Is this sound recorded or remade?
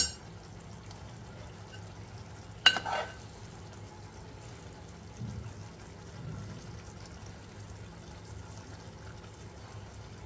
recorded